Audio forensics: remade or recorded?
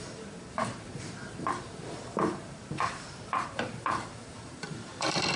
remade